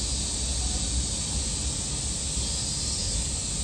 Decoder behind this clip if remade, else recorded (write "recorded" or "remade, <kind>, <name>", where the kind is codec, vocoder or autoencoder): recorded